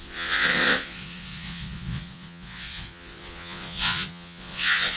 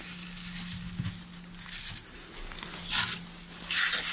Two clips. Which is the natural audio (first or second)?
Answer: second